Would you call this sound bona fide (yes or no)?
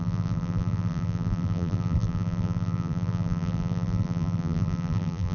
no